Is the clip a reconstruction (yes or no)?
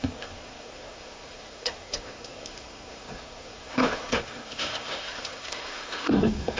yes